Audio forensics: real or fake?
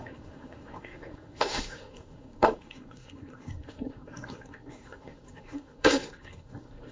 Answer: fake